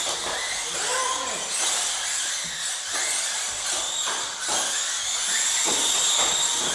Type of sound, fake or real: real